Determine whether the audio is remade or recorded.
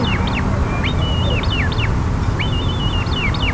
recorded